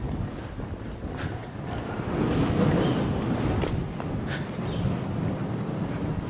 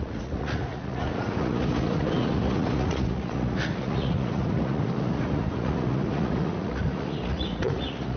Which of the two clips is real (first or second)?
first